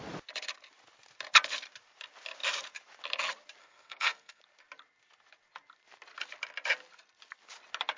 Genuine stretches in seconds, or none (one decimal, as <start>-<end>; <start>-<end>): 0.0-3.6; 4.4-8.0